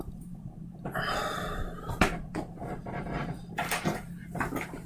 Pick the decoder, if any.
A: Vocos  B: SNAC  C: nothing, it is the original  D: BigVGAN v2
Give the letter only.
D